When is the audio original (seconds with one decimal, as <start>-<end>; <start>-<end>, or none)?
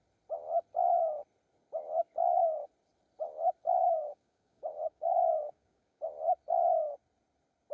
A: 0.0-2.2; 2.7-3.8; 6.0-7.7